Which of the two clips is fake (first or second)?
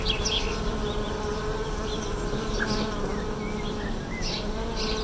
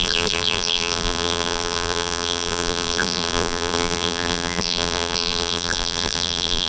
second